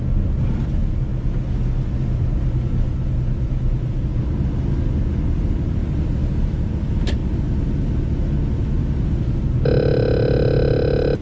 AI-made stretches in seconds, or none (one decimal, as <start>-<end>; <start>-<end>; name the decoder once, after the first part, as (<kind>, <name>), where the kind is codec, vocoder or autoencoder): none